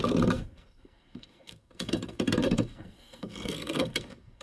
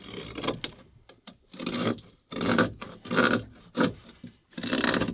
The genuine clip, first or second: second